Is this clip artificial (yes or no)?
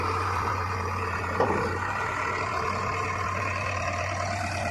no